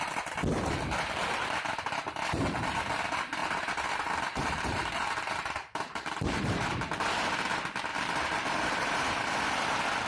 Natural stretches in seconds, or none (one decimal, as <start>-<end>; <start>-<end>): 0.0-3.4; 6.9-7.9; 9.4-10.1